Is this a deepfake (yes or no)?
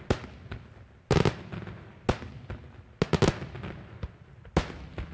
no